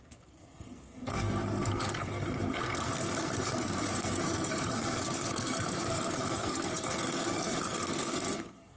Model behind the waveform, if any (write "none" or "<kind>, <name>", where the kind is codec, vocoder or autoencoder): codec, SNAC